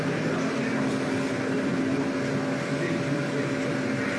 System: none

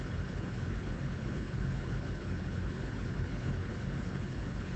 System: codec, HILCodec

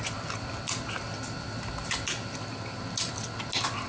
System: none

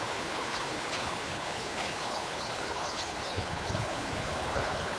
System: codec, HILCodec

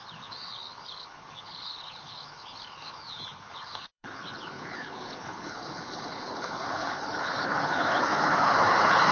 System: codec, HILCodec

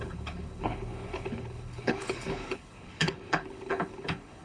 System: codec, HILCodec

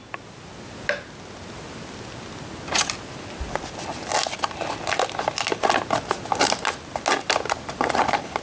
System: none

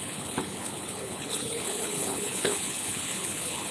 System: codec, HILCodec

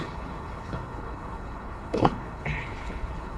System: codec, HILCodec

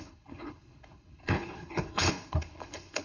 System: codec, HILCodec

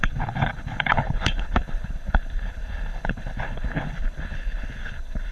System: codec, HILCodec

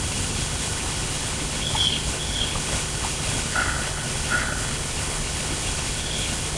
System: codec, HILCodec